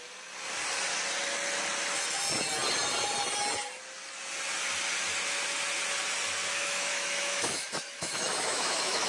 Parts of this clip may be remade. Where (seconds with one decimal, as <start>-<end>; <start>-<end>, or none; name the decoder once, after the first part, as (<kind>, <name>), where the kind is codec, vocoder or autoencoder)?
6.5-9.1 (autoencoder, DAC-VAE)